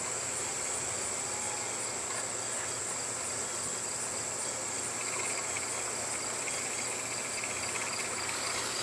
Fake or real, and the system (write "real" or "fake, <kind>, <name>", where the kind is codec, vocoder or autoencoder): real